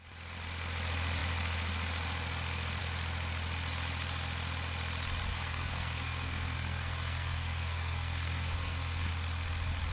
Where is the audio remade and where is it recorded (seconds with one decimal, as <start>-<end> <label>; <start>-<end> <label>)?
0.0-5.3 recorded; 5.3-9.1 remade; 9.1-9.9 recorded